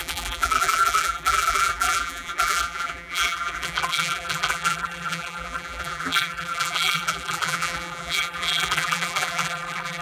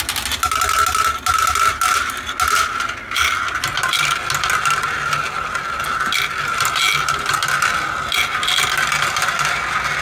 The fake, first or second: first